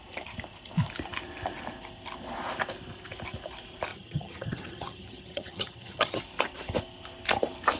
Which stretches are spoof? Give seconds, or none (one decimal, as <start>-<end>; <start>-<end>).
3.9-6.2